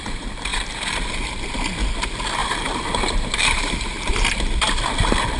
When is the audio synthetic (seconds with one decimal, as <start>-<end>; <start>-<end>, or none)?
2.4-4.1

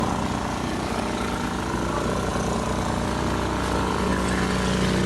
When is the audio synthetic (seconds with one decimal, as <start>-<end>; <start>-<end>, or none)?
2.3-4.1

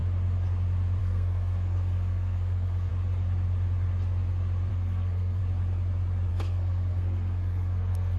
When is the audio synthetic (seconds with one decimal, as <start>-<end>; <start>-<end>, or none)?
1.0-2.9; 4.7-5.4; 6.3-8.2

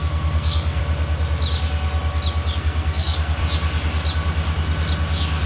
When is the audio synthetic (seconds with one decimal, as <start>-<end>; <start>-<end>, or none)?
0.0-0.8; 2.6-3.4

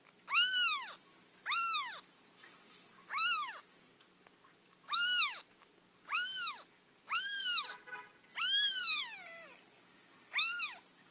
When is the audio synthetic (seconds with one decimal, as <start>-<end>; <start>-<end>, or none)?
none

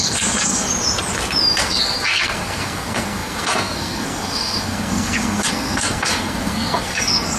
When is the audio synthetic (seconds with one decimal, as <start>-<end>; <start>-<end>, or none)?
0.0-0.7; 1.6-7.4

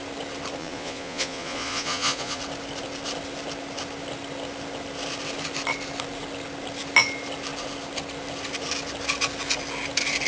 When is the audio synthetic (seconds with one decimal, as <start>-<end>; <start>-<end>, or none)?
0.6-2.4